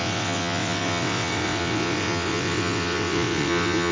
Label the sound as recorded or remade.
remade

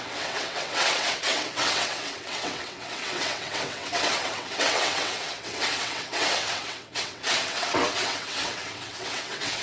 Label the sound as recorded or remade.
remade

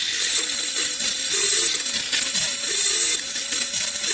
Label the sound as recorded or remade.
recorded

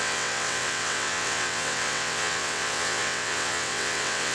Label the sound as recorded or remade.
remade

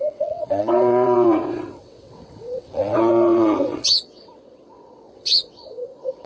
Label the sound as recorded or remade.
remade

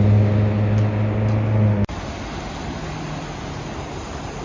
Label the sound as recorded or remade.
recorded